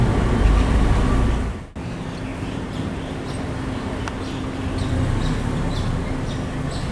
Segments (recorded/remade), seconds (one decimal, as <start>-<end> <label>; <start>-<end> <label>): 0.0-2.3 recorded; 2.3-3.0 remade; 3.0-6.9 recorded